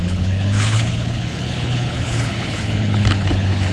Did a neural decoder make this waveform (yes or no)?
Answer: yes